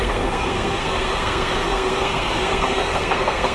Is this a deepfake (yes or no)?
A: yes